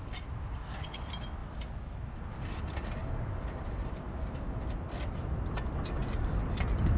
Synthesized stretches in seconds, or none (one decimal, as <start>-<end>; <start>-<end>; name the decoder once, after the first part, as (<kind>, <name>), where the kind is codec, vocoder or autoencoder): 3.0-4.2 (vocoder, BigVGAN v2); 6.0-6.6